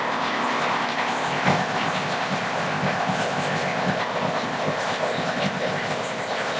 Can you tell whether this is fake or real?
fake